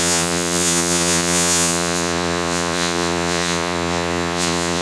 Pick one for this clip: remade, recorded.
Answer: remade